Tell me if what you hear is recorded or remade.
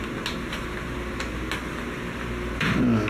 recorded